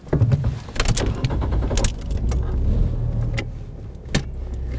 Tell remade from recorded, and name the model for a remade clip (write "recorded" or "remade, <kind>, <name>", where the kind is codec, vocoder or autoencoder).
recorded